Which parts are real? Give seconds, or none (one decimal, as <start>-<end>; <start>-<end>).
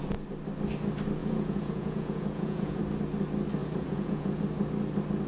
0.0-1.2; 2.8-3.6; 4.4-5.3